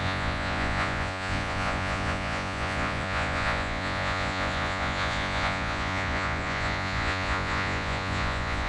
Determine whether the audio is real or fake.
fake